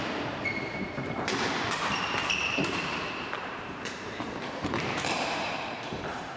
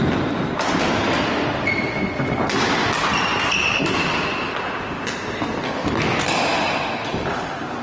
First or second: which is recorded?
second